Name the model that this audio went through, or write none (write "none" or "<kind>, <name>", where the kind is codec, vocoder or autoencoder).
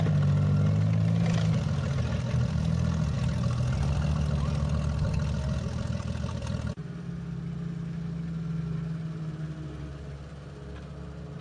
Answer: none